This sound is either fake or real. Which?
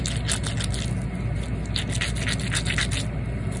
real